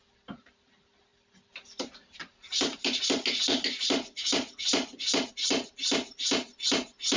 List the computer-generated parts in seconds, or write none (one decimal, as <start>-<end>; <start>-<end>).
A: none